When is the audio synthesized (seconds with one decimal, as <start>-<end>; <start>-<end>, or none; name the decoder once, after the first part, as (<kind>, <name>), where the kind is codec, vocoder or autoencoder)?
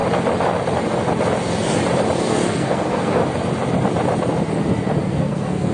2.2-3.2 (codec, SNAC); 5.0-5.7